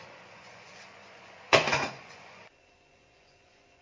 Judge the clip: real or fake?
fake